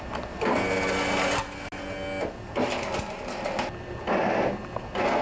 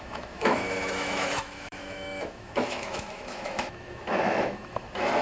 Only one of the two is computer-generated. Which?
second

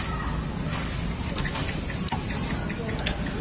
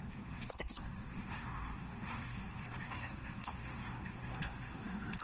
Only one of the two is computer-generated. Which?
second